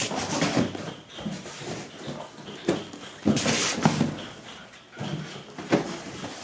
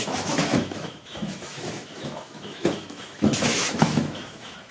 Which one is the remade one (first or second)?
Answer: second